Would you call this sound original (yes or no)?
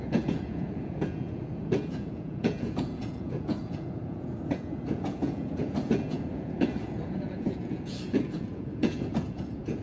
no